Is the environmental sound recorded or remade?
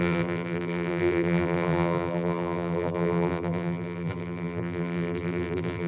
remade